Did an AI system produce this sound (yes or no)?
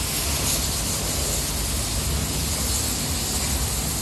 no